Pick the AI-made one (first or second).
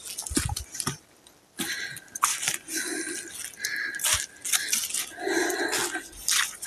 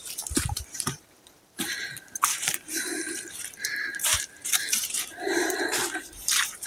second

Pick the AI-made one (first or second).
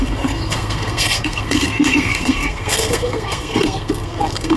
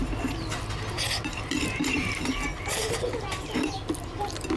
first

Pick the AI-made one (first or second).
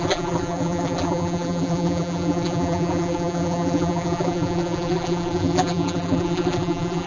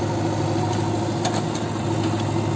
first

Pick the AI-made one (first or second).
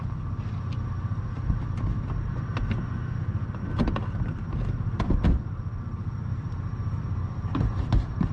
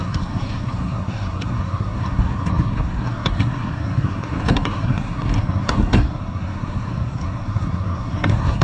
second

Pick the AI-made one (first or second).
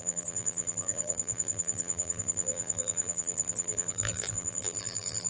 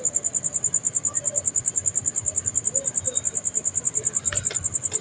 first